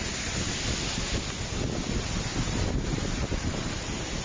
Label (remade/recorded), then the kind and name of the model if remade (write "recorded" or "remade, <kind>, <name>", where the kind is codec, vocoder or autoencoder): recorded